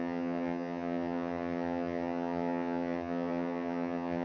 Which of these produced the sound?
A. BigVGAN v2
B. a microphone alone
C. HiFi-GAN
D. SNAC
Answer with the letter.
C